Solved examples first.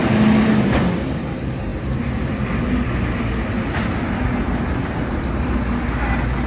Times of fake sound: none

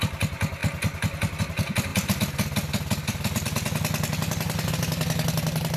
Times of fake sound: none